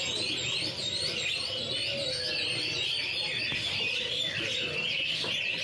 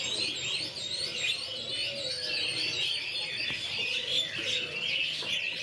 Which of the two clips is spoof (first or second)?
first